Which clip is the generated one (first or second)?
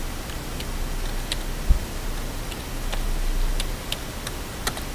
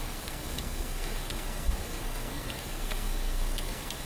second